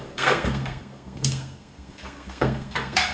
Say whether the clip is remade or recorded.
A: remade